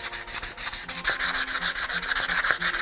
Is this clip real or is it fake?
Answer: real